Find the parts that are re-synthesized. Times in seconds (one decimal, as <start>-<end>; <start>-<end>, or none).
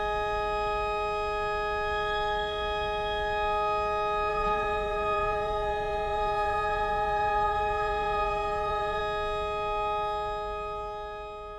4.3-9.0